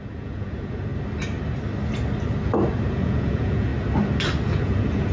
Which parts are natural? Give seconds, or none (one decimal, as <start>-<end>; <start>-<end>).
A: 0.9-2.9; 3.7-4.5